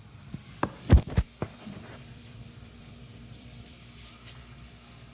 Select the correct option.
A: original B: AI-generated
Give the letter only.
B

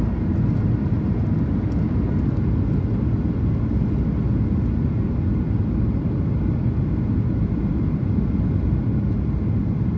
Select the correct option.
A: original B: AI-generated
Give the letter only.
A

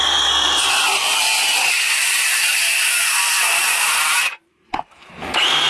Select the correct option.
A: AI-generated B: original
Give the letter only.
A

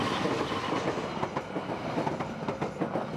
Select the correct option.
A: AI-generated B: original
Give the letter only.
B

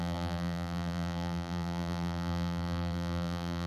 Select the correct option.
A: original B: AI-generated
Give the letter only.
B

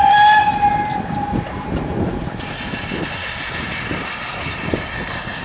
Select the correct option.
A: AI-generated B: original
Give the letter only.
B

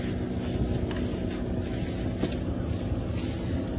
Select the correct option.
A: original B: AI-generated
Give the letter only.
A